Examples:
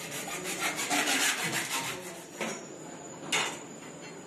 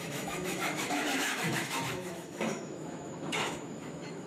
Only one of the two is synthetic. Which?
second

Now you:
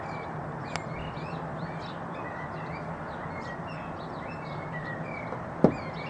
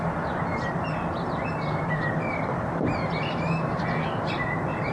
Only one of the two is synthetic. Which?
second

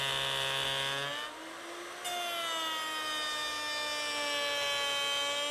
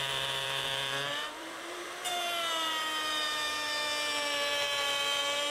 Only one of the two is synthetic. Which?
second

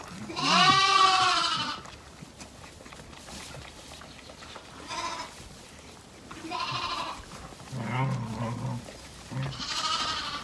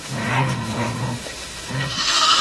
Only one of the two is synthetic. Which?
second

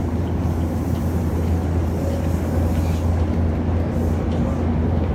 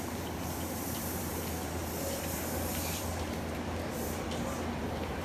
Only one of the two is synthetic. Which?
second